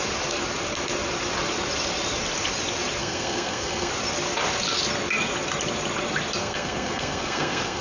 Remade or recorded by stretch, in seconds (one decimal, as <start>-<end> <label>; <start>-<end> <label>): 0.0-3.0 recorded; 3.0-3.9 remade; 3.9-6.4 recorded; 6.4-7.8 remade